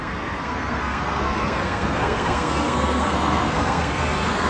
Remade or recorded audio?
remade